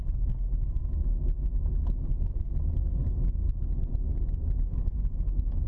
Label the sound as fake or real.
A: real